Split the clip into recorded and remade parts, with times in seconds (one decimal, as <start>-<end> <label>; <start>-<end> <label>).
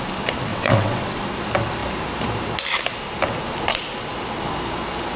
0.0-0.5 recorded; 0.5-1.2 remade; 1.2-5.2 recorded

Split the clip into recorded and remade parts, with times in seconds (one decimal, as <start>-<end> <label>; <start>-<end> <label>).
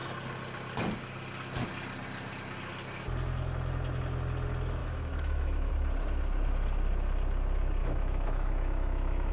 0.0-4.8 recorded; 4.8-5.7 remade; 5.7-7.8 recorded; 7.8-9.3 remade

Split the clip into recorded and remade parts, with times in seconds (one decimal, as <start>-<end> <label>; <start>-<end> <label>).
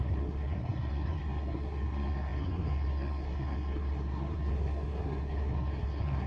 0.0-6.3 remade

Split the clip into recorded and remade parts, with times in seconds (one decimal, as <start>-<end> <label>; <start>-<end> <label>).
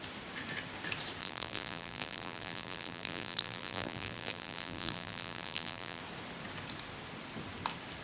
0.0-1.2 recorded; 1.2-6.0 remade; 6.0-8.0 recorded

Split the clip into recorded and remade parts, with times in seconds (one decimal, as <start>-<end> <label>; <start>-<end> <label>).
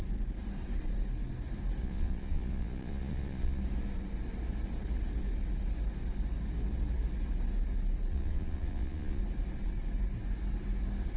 0.0-1.8 recorded; 1.8-3.6 remade; 3.6-8.1 recorded; 8.1-9.2 remade; 9.2-11.2 recorded